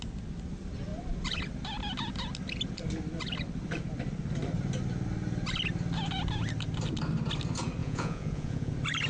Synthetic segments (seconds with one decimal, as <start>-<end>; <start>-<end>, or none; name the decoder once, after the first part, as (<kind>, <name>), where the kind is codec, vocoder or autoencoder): 7.8-8.7 (vocoder, Vocos)